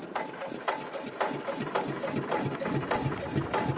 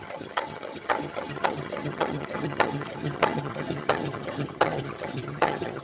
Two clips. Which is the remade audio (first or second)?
second